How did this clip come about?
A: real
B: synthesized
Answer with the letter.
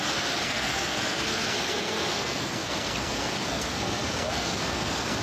B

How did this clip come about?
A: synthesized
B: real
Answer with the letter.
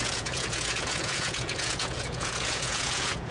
A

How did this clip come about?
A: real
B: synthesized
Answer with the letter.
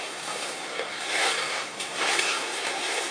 B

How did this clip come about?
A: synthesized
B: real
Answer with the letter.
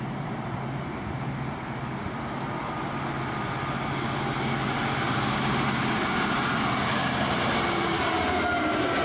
B